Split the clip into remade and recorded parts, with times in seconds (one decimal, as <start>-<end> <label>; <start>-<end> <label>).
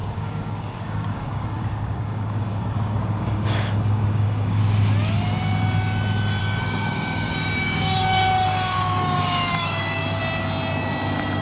0.0-4.6 remade; 4.6-6.4 recorded; 6.4-10.2 remade; 10.2-11.4 recorded